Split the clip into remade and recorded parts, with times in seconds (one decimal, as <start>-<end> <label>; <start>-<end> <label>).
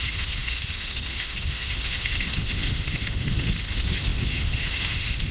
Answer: 0.0-5.3 remade